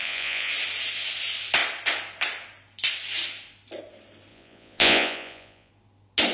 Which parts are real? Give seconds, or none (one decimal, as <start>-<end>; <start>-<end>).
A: 0.5-4.3; 5.7-6.3